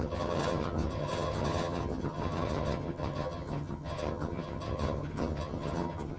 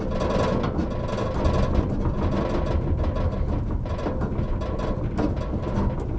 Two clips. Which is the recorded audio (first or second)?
second